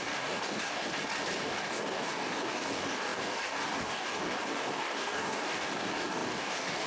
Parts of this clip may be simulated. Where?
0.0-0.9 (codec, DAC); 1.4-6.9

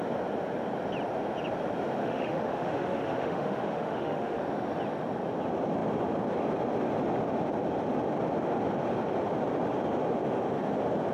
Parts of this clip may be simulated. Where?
2.0-4.4 (autoencoder, DAC-VAE)

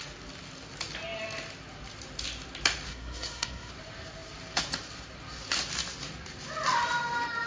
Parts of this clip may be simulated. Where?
2.9-3.7 (codec, SNAC)

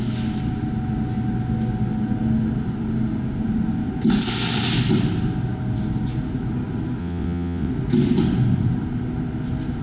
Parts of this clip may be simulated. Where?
7.0-7.7 (vocoder, WaveNeXt)